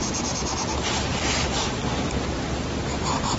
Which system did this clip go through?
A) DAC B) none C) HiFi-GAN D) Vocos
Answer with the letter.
B